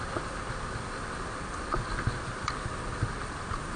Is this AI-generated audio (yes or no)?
no